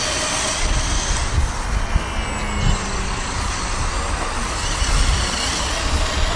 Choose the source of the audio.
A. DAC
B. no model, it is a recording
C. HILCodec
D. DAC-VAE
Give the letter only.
B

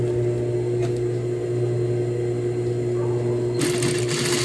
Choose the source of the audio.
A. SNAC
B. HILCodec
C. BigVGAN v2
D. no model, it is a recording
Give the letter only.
D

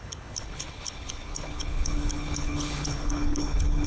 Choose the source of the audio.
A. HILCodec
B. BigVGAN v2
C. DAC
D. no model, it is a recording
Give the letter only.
A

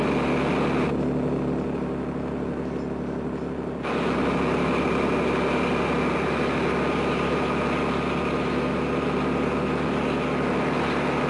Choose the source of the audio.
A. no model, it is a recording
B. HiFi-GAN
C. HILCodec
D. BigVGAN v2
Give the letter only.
A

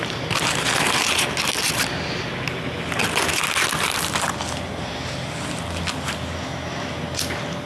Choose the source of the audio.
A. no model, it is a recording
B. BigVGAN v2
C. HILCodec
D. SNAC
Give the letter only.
A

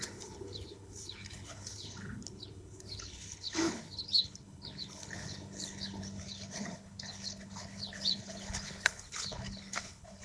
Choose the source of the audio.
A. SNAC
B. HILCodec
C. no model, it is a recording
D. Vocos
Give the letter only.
B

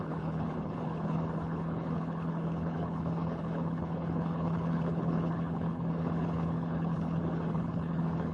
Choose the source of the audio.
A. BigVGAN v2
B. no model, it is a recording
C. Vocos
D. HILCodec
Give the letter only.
D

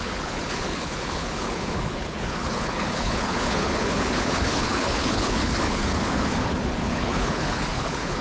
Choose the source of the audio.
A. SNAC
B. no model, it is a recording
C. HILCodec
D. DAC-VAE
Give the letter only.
C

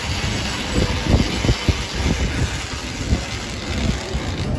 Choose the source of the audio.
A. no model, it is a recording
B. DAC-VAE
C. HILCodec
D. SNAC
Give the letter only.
A